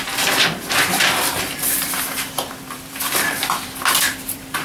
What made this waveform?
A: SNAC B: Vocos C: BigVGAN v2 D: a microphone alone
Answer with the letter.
C